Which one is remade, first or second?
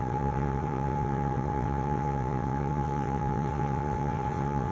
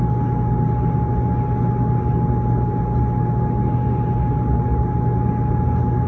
first